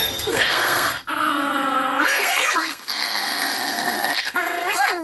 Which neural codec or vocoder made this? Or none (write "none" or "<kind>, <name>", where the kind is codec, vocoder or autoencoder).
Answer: codec, SNAC